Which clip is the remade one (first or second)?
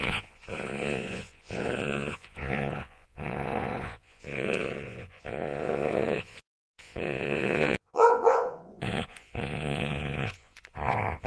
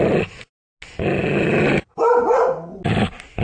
first